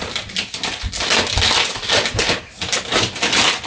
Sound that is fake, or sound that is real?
real